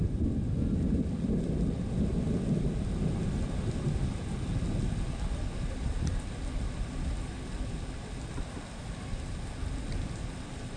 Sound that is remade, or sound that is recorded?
recorded